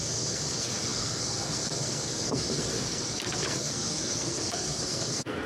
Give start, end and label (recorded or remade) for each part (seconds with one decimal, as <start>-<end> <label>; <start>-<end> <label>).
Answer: 0.0-5.5 remade

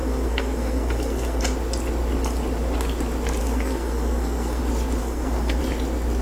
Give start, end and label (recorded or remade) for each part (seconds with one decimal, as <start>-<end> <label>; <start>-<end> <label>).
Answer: 0.0-1.4 remade; 1.4-3.4 recorded; 3.4-4.6 remade; 4.6-5.0 recorded; 5.0-5.6 remade; 5.6-6.2 recorded

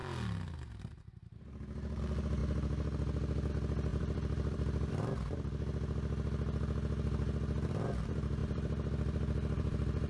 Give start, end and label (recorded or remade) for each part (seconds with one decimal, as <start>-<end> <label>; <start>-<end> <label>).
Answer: 0.0-3.9 recorded; 3.9-4.9 remade; 4.9-8.4 recorded; 8.4-10.1 remade

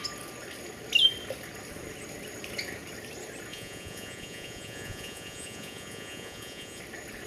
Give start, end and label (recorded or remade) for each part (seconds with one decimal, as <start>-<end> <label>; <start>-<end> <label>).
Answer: 0.0-3.5 recorded; 3.5-6.8 remade; 6.8-7.3 recorded